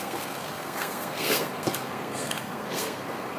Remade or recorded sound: remade